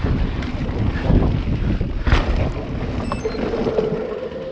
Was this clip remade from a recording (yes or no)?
no